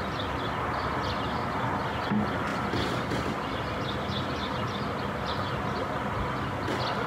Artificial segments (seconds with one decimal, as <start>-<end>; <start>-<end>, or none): none